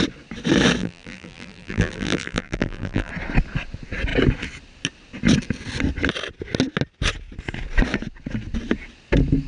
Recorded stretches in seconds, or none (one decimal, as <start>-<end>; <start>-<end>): 0.0-0.8; 3.1-9.5